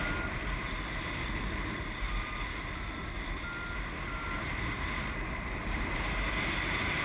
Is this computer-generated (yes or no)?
no